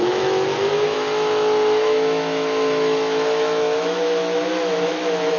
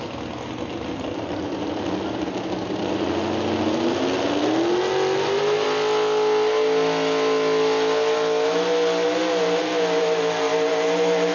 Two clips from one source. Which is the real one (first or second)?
second